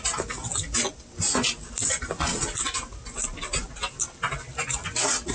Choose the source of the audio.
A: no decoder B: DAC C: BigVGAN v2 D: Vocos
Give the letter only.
C